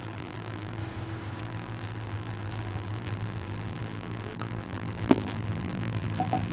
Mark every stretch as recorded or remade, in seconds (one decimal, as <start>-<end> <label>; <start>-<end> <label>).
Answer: 0.0-0.8 remade; 0.8-1.4 recorded; 1.4-6.5 remade